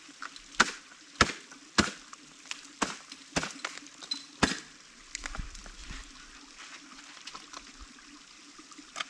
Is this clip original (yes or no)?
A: yes